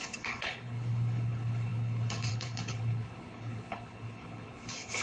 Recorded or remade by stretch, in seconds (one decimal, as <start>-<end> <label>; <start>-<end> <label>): 0.0-5.0 remade